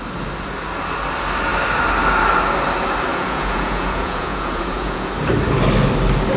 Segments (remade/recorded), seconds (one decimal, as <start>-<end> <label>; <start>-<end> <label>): 0.0-3.1 recorded; 3.1-5.1 remade; 5.1-6.4 recorded